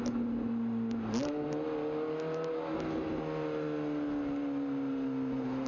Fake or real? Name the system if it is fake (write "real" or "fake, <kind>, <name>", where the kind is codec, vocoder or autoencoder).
real